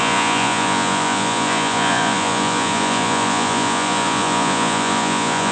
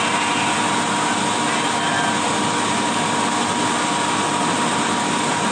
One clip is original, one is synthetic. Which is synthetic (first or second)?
first